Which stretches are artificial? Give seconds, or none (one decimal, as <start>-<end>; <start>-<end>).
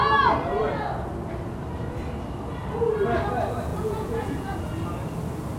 3.7-4.6